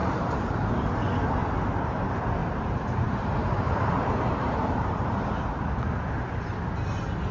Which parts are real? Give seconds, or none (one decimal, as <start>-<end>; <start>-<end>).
0.9-1.4; 2.0-2.4; 5.5-7.3

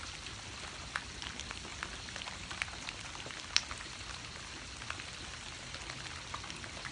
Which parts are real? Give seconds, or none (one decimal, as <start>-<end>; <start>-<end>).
0.0-6.9

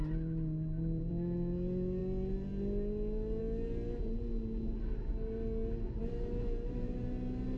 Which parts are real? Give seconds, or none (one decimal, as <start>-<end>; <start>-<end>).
0.0-7.6

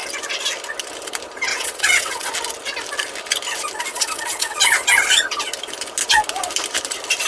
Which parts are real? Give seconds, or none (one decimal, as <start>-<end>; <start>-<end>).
0.0-1.5; 2.3-3.9; 4.6-7.3

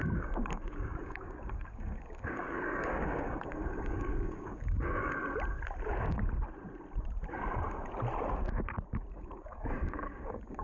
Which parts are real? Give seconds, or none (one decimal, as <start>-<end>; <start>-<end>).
5.2-9.1